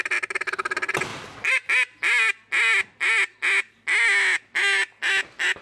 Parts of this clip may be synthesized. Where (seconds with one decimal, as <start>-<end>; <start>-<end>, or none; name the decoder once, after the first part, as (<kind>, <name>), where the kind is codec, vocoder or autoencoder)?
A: 1.1-1.7 (vocoder, BigVGAN v2)